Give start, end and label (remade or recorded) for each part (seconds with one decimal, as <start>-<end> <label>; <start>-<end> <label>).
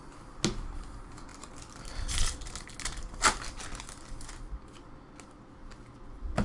0.0-6.4 recorded